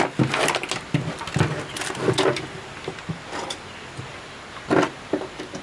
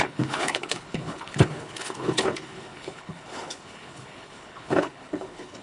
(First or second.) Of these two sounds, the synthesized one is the second